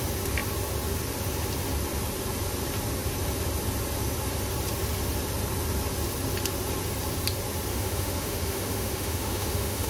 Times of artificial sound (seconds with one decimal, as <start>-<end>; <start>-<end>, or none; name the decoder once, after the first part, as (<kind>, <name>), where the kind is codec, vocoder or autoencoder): 7.7-9.9 (autoencoder, DAC-VAE)